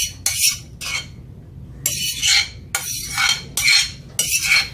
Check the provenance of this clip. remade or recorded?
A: recorded